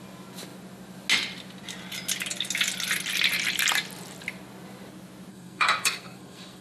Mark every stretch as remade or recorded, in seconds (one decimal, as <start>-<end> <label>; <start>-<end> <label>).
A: 0.0-5.3 recorded; 5.3-6.6 remade